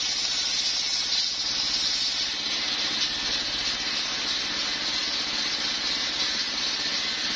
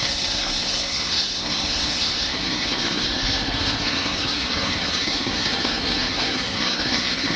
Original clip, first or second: first